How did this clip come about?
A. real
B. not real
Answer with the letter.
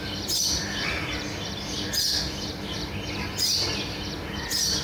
A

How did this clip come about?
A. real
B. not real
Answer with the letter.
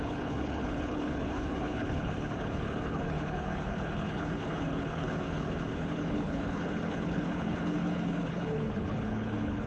B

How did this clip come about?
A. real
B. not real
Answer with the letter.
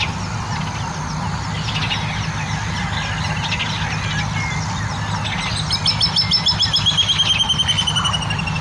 A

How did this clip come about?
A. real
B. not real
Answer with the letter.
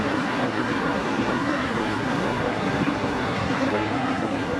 B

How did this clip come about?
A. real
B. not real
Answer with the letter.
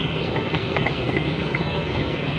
B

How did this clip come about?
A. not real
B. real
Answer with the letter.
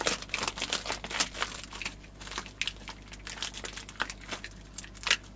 B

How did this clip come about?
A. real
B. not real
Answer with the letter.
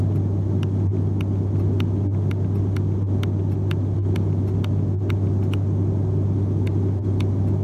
A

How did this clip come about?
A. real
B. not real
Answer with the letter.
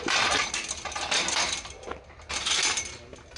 A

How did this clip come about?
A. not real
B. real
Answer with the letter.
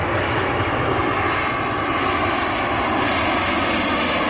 B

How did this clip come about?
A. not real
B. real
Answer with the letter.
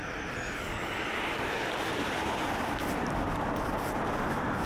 B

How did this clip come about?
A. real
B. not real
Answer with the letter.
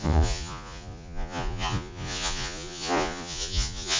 B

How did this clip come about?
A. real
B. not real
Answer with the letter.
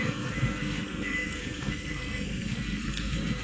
B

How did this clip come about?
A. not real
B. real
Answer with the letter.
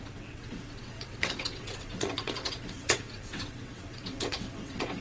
A